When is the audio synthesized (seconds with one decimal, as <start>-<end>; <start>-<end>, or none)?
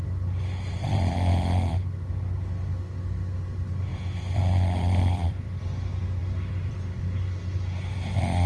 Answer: 3.9-5.6; 6.2-7.0